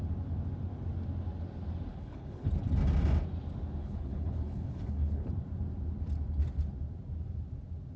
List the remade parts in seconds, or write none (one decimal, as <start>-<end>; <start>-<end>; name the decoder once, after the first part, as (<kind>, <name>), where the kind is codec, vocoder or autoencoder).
1.9-2.5 (codec, HILCodec); 3.8-5.3